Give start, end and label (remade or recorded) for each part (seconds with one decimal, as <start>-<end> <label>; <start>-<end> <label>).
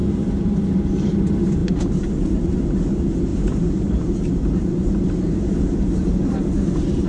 0.0-1.2 remade; 1.2-1.6 recorded; 1.6-2.6 remade; 2.6-3.3 recorded; 3.3-7.1 remade